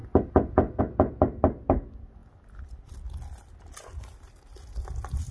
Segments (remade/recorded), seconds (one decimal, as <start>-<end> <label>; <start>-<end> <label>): 0.0-5.3 recorded